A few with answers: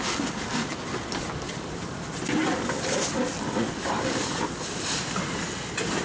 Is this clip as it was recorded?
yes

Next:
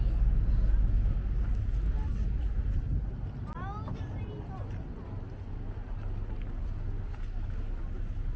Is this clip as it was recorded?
yes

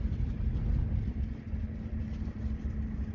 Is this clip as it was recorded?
yes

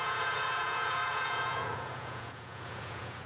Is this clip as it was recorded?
no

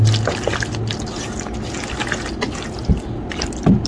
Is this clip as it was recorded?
yes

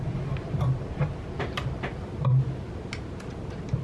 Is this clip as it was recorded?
yes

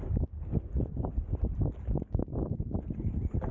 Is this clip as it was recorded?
yes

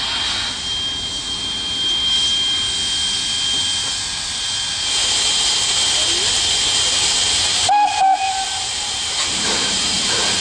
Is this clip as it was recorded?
yes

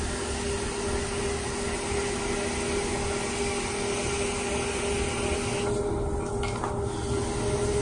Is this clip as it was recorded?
yes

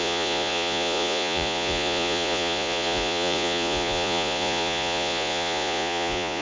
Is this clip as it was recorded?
no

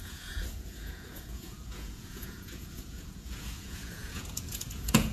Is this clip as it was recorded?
no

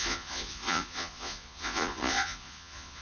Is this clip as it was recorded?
no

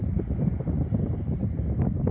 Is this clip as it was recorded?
yes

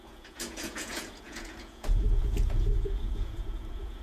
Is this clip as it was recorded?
no